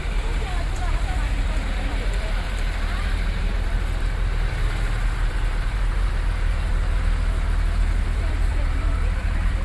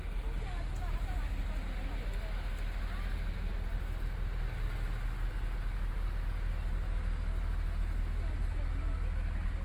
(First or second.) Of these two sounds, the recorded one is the second